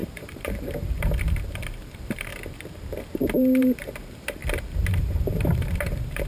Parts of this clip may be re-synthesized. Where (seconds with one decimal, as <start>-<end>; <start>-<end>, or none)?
0.0-2.3; 3.3-4.4; 4.9-6.3